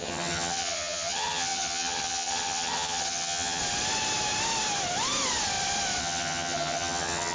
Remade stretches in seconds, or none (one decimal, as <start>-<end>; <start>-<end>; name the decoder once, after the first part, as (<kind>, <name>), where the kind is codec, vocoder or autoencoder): 0.0-3.6 (vocoder, HiFi-GAN); 6.0-7.3

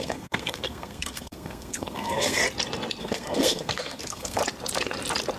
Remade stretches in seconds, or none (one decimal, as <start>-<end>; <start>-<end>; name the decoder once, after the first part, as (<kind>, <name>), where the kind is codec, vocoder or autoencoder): 0.0-2.4 (codec, SNAC); 3.0-4.4

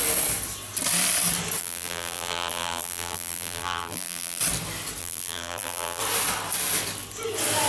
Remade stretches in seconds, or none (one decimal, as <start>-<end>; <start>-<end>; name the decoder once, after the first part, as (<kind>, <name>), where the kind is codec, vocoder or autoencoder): 1.6-4.4 (vocoder, BigVGAN v2); 5.0-6.0

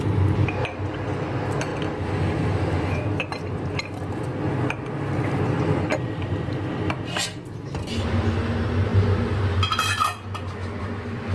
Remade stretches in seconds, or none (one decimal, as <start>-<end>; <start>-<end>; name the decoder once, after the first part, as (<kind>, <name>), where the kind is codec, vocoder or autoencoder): none

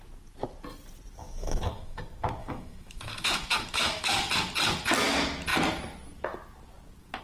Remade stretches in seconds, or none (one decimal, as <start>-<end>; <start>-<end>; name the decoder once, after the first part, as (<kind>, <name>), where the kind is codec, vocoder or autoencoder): 1.2-2.0 (autoencoder, DAC-VAE); 2.4-4.3